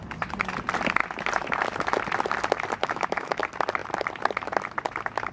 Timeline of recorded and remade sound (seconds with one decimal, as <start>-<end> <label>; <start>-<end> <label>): 0.0-2.8 recorded; 2.8-3.4 remade; 3.4-5.3 recorded